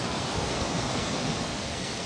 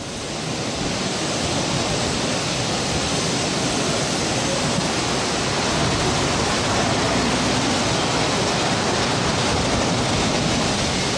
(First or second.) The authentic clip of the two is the second